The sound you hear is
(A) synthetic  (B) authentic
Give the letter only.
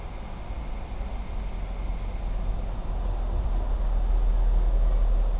B